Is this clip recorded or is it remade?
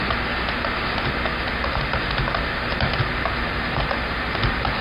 recorded